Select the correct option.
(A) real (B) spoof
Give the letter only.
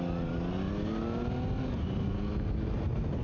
A